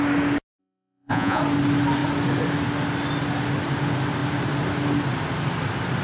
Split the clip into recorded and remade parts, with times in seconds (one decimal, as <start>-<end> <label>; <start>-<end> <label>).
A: 0.0-0.6 recorded; 0.6-1.4 remade; 1.4-6.0 recorded